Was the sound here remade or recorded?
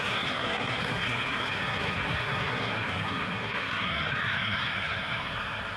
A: remade